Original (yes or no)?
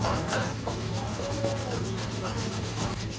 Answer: no